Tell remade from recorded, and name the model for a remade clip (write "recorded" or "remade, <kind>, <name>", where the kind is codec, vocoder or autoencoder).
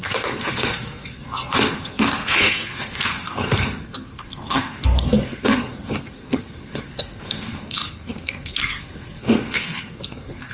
remade, codec, SNAC